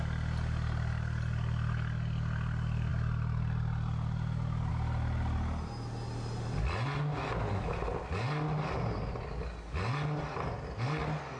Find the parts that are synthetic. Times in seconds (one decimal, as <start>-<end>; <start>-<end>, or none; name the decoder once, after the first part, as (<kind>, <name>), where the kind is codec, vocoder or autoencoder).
none